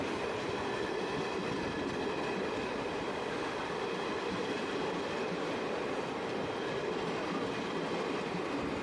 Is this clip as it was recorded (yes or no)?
no